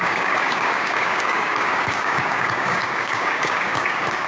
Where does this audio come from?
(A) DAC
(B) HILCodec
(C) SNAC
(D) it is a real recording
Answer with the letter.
A